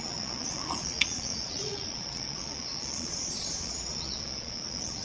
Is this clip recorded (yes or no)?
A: no